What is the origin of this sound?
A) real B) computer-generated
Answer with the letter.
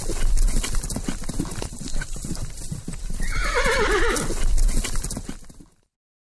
A